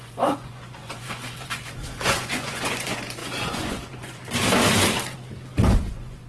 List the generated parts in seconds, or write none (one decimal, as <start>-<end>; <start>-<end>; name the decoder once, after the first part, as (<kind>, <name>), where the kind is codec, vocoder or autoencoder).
0.0-4.2 (vocoder, Vocos); 5.7-6.3

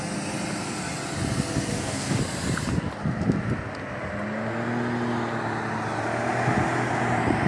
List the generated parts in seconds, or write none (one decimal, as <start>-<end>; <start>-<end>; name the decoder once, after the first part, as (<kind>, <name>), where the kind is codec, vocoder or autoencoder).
1.7-2.2 (codec, DAC)